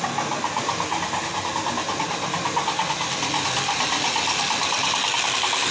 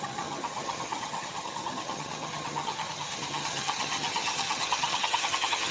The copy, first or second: second